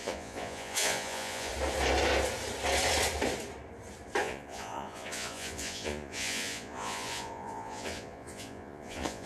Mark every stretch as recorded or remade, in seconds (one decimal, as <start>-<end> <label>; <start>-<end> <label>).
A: 0.0-1.5 remade; 1.5-4.2 recorded; 4.2-9.3 remade